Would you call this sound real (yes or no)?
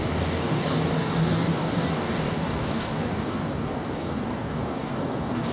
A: no